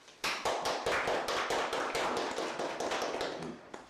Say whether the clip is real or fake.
real